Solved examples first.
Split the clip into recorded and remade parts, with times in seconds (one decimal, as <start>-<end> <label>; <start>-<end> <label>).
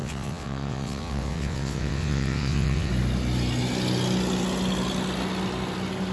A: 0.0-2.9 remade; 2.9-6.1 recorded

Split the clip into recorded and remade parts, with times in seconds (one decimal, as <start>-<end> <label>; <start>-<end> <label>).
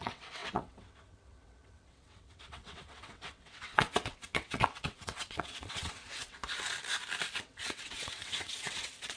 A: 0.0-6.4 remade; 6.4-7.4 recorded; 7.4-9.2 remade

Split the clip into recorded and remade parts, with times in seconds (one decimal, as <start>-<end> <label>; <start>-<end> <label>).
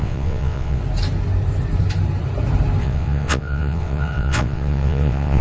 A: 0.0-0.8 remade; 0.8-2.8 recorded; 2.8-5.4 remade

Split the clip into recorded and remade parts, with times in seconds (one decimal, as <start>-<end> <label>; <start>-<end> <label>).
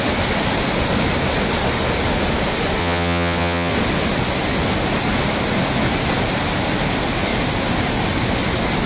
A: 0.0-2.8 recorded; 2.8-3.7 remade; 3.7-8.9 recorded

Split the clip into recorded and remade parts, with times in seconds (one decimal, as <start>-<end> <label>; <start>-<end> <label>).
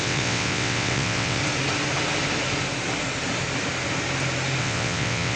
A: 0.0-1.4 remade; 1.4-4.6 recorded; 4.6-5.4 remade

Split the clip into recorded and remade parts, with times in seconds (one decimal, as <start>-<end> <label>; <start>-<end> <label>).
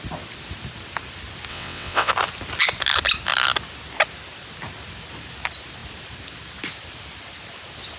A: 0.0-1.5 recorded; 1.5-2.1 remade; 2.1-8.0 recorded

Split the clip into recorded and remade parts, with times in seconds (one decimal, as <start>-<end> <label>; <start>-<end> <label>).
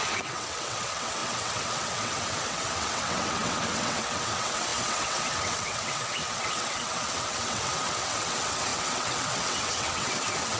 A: 0.0-10.6 remade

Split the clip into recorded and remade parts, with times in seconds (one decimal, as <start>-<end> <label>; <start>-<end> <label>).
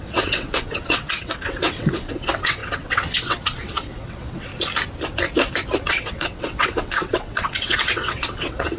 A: 0.0-4.5 remade; 4.5-5.9 recorded; 5.9-8.8 remade